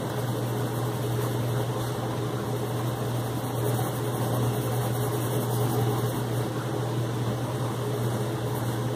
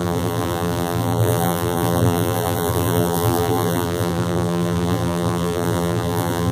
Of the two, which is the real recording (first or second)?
first